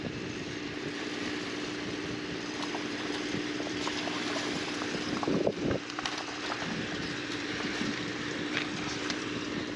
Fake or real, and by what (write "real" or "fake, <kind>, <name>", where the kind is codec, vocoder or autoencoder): fake, vocoder, BigVGAN v2